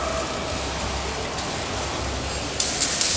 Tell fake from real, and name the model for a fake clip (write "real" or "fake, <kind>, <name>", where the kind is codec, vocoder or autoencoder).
real